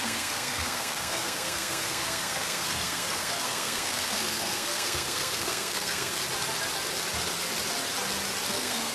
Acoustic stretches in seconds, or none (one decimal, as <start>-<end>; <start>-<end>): 6.2-8.5